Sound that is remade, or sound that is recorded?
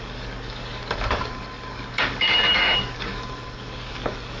remade